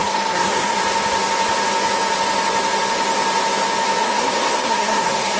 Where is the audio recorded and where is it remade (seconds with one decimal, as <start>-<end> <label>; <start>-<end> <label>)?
0.0-0.8 remade; 0.8-4.0 recorded; 4.0-5.4 remade